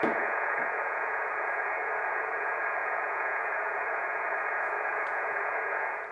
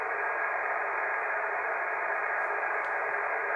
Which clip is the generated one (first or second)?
first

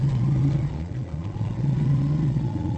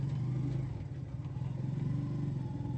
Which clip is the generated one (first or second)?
first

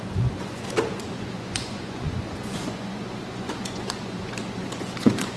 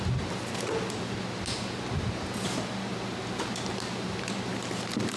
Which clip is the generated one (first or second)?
first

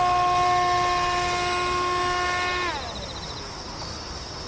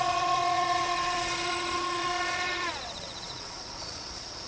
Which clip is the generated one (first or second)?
second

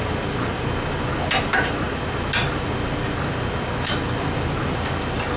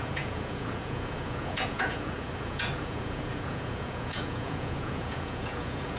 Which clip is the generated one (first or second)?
second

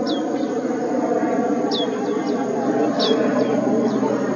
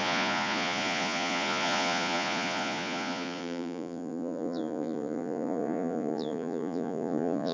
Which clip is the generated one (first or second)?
second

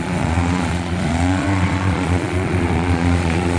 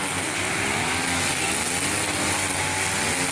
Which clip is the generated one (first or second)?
first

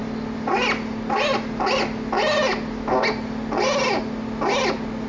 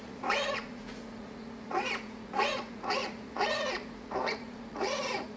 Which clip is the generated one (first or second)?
second